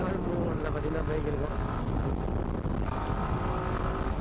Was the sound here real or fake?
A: real